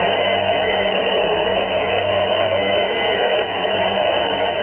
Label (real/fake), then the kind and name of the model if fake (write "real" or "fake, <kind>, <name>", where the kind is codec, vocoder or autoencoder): fake, codec, SNAC